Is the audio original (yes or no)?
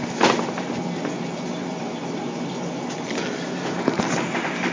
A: yes